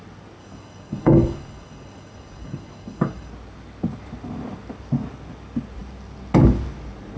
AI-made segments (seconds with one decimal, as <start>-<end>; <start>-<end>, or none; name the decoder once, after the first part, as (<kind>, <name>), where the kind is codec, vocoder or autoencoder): 0.4-3.3 (codec, DAC)